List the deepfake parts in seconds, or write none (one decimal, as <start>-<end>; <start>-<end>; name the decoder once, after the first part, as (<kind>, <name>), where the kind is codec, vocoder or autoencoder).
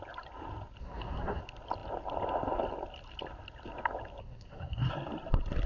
0.8-1.4 (codec, SNAC); 4.2-4.9